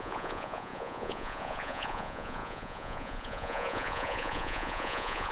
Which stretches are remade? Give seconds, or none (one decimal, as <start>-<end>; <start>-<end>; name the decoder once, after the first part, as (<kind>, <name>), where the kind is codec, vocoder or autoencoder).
0.0-5.3 (vocoder, Vocos)